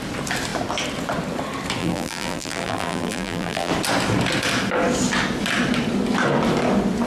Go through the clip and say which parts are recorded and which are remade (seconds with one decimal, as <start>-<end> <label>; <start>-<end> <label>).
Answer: 0.0-1.8 recorded; 1.8-3.7 remade; 3.7-7.1 recorded